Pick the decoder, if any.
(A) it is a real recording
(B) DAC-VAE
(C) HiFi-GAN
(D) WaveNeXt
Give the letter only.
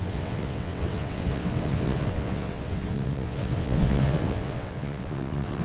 D